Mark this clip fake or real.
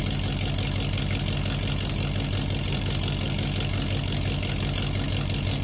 real